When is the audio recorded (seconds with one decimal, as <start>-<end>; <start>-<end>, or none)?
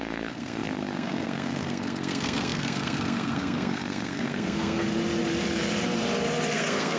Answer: 4.9-6.5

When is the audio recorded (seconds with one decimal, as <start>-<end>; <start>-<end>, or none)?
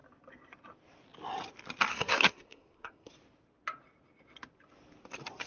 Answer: 0.0-1.9; 3.1-5.5